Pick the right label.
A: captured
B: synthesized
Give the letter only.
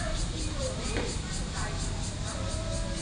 A